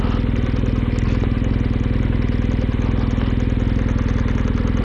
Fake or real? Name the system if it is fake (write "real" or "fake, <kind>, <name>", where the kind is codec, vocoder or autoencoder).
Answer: real